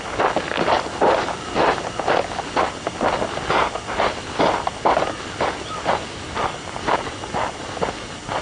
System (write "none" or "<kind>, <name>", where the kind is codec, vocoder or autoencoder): none